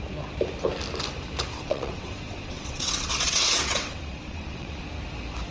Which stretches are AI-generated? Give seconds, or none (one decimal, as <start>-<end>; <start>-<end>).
1.5-4.8